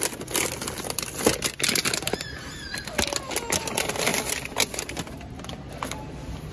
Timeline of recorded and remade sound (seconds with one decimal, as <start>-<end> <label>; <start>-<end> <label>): 0.0-6.5 recorded